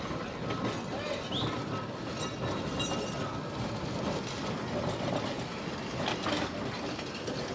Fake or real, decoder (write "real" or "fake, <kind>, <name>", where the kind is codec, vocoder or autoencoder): real